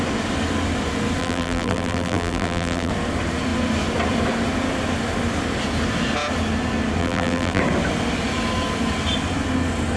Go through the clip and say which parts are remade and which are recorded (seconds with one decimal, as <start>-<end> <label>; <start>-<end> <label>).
0.0-1.2 recorded; 1.2-2.9 remade; 2.9-7.0 recorded; 7.0-7.6 remade; 7.6-10.0 recorded